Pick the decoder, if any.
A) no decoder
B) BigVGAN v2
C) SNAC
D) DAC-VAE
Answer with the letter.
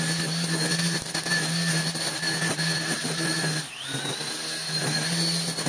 A